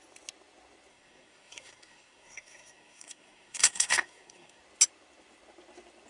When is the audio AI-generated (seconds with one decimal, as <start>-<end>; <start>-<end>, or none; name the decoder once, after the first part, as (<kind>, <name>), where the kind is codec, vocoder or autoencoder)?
0.9-4.6 (codec, SNAC)